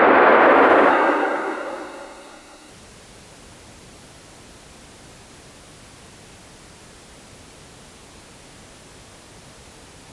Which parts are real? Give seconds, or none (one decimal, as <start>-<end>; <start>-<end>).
0.0-0.9; 2.7-10.1